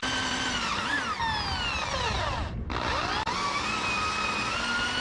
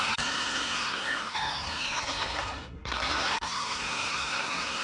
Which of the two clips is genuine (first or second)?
first